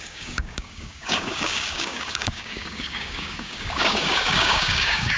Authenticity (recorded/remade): remade